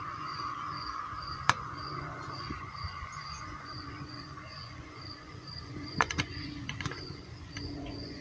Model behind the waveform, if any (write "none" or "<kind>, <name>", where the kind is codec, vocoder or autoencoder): vocoder, Vocos